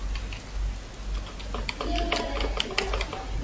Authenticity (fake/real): real